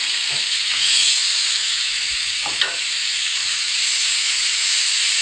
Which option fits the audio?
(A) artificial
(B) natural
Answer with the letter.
A